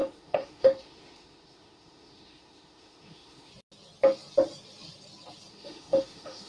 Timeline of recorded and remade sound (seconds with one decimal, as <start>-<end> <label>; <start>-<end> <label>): 0.0-3.5 remade; 3.5-5.5 recorded; 5.5-6.5 remade